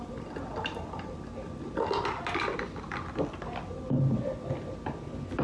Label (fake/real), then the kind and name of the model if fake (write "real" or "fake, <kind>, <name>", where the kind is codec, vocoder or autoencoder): real